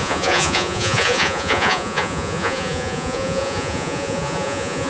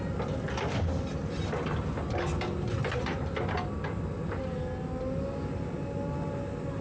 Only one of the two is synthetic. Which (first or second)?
first